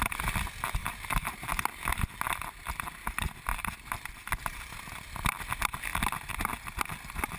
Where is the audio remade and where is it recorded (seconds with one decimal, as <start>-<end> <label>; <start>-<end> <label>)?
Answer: 0.0-0.8 recorded; 0.8-1.6 remade; 1.6-3.5 recorded; 3.5-4.1 remade; 4.1-7.4 recorded